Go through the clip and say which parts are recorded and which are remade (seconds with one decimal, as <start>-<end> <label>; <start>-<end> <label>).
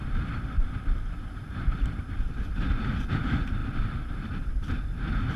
0.0-5.4 recorded